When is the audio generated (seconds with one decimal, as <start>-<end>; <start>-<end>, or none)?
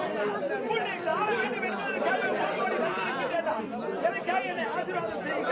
1.1-2.1